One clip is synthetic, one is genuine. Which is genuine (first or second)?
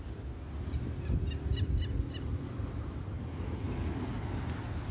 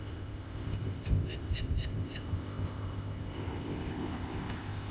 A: first